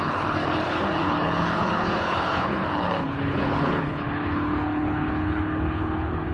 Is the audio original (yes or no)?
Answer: no